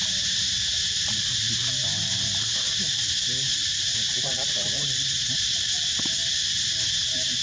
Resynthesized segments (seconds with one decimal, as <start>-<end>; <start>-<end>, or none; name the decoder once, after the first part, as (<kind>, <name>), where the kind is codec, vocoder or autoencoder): 0.0-7.4 (vocoder, BigVGAN v2)